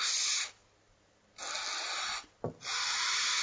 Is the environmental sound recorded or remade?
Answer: recorded